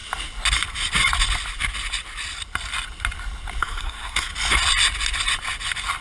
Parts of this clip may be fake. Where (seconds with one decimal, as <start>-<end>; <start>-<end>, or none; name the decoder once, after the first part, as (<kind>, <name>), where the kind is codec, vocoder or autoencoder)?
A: 3.6-4.3 (codec, SNAC)